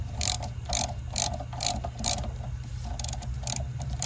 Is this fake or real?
real